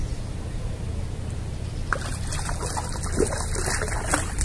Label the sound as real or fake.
real